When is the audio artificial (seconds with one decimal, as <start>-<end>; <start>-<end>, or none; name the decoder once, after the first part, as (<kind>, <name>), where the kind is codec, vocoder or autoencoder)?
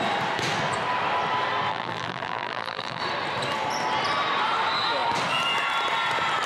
1.7-3.0 (vocoder, BigVGAN v2)